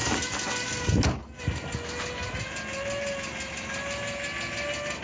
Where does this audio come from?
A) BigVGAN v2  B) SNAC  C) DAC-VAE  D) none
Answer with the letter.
D